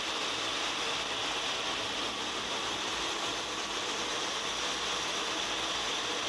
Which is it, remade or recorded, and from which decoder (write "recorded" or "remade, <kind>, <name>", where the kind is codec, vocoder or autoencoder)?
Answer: recorded